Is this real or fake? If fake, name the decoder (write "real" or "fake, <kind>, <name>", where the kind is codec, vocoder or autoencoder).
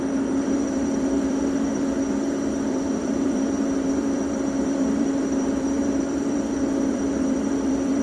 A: fake, vocoder, BigVGAN v2